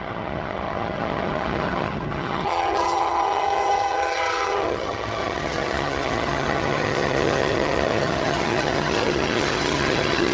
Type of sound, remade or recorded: remade